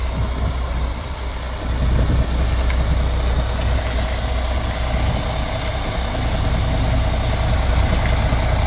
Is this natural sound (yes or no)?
yes